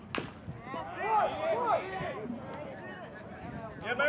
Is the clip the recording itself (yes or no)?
yes